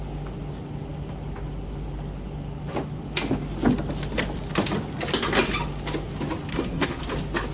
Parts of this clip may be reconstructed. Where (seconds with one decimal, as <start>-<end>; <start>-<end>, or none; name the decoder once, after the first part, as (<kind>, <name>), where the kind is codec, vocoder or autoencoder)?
6.5-7.0 (codec, SNAC)